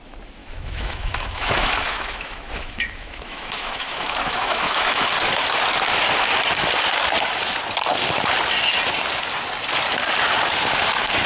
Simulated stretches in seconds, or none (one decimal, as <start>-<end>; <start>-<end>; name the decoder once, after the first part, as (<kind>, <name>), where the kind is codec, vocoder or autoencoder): 0.4-5.1 (autoencoder, DAC-VAE)